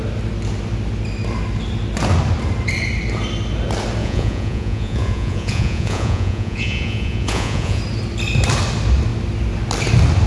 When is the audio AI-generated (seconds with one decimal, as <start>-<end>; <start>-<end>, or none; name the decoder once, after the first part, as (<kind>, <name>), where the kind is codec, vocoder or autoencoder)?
4.0-7.8 (vocoder, Vocos)